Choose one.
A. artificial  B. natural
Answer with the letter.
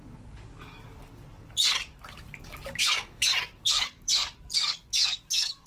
A